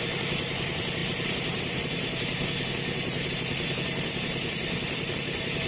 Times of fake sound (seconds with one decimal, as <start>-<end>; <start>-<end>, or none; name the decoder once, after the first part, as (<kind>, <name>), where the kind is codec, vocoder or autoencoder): none